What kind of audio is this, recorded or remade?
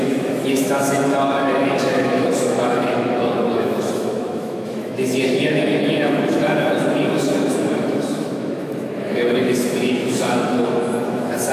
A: remade